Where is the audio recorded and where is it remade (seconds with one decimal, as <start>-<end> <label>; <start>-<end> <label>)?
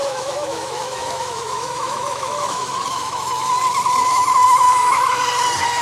0.0-3.5 remade; 3.5-4.0 recorded; 4.0-5.2 remade; 5.2-5.8 recorded